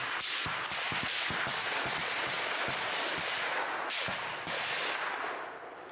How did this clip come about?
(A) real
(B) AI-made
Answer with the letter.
A